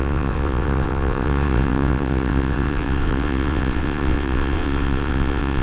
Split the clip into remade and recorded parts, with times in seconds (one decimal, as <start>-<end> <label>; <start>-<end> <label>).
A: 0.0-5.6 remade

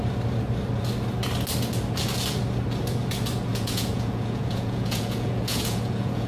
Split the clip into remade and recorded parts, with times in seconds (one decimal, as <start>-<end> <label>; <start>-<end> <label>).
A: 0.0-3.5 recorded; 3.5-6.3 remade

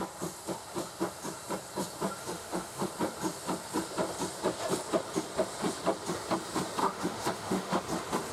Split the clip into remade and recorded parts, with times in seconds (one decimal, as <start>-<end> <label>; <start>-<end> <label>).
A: 0.0-2.2 recorded; 2.2-2.9 remade; 2.9-6.8 recorded; 6.8-7.8 remade; 7.8-8.3 recorded

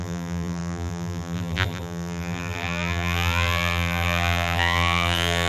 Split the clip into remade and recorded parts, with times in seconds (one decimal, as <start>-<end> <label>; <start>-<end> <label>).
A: 0.0-5.5 remade